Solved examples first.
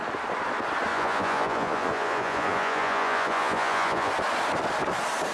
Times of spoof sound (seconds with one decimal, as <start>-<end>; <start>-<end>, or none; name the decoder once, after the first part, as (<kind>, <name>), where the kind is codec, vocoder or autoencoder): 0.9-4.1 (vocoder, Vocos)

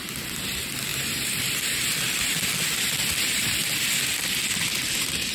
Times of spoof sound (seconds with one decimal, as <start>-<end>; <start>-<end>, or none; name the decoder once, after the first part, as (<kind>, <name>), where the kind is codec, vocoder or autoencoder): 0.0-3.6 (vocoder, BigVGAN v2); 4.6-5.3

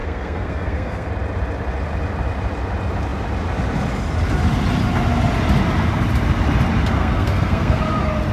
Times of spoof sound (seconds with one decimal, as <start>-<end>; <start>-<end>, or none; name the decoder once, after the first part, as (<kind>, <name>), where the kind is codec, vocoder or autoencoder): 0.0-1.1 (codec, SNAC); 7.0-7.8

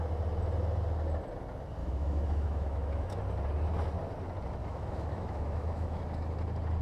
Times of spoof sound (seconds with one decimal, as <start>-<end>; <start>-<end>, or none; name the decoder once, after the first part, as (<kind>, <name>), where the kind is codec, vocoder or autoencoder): 1.8-3.2 (autoencoder, DAC-VAE); 4.6-6.0

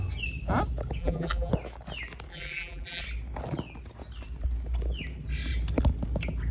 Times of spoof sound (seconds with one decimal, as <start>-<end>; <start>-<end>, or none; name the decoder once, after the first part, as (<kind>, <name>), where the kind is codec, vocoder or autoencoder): 1.0-1.5 (vocoder, BigVGAN v2); 2.3-3.0

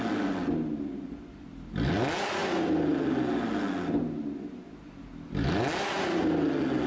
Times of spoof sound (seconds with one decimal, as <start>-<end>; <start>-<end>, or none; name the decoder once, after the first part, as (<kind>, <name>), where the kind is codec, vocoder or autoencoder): none

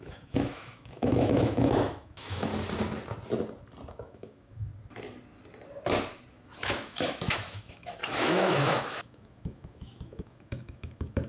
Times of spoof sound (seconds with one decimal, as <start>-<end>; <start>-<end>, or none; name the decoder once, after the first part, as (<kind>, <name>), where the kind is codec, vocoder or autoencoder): 0.0-2.5 (autoencoder, DAC-VAE); 3.9-4.7; 6.3-11.3

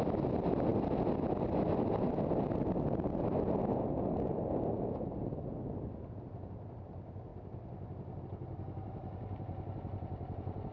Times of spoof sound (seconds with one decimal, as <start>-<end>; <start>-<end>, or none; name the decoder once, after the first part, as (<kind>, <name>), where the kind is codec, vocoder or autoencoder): none